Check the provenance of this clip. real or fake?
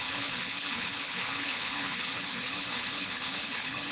fake